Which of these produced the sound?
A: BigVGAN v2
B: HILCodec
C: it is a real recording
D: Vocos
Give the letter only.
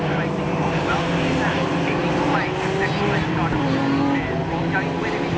C